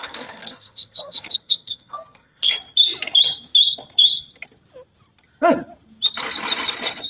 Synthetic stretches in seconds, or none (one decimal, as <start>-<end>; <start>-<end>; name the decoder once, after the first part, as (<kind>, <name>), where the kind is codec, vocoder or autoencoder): 0.0-2.5 (codec, SNAC)